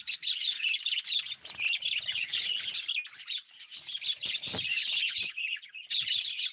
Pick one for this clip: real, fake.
real